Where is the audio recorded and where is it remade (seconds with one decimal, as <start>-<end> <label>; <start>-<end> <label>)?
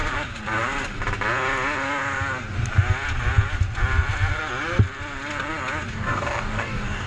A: 0.0-5.9 recorded; 5.9-7.1 remade